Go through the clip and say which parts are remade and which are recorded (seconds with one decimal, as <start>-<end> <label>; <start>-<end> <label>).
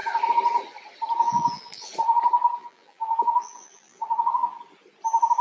0.0-1.2 recorded; 1.2-1.9 remade; 1.9-2.6 recorded; 2.6-4.6 remade; 4.6-5.4 recorded